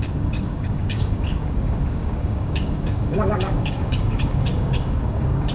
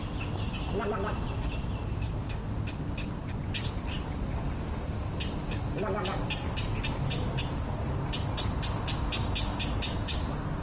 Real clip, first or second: second